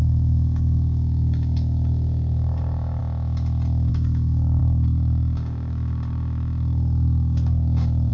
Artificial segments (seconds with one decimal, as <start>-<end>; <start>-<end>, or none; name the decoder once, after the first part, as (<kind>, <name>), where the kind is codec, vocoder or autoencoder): 0.0-3.0 (codec, DAC); 3.9-8.1